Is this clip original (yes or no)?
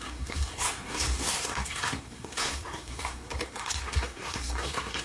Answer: no